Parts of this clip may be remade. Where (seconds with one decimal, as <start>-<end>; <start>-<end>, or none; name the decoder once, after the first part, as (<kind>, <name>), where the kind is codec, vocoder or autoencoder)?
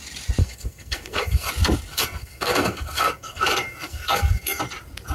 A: 0.4-1.5 (codec, SNAC); 1.9-4.6